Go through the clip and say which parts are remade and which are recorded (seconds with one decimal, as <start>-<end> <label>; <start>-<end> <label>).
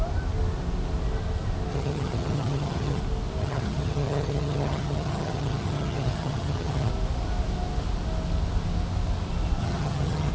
0.0-1.7 recorded; 1.7-3.0 remade; 3.0-3.4 recorded; 3.4-6.9 remade; 6.9-9.6 recorded; 9.6-10.3 remade